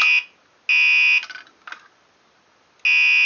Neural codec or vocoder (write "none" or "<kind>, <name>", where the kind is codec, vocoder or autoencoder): none